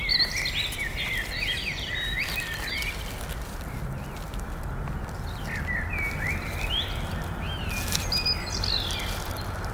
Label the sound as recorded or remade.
recorded